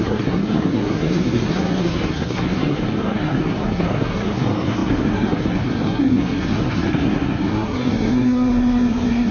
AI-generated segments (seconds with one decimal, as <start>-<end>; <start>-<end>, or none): 0.0-9.3